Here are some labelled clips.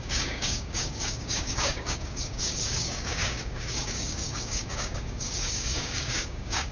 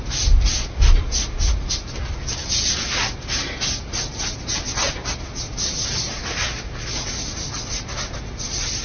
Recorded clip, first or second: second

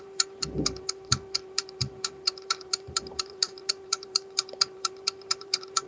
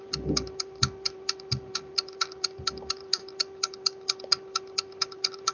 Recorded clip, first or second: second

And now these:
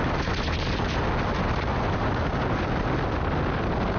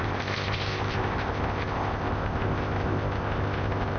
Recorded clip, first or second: first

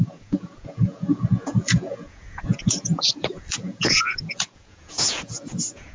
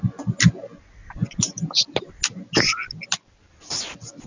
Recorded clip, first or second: second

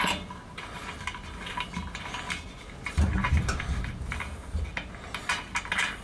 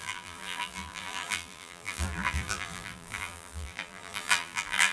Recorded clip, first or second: first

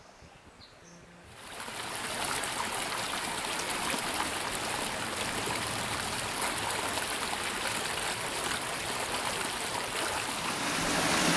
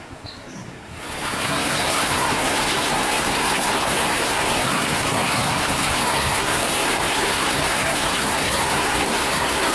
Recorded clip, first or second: first